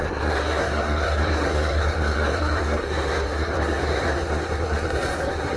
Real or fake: fake